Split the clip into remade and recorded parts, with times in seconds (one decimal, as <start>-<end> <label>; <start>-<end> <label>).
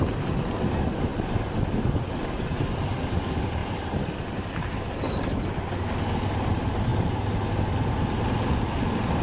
0.0-9.2 recorded